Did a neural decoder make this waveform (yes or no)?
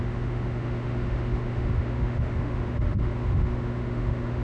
yes